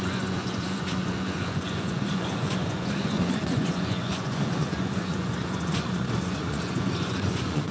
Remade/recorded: remade